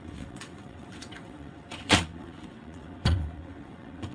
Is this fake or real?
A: fake